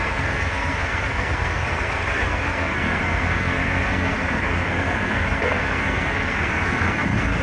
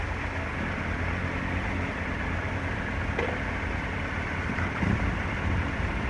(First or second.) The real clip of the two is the second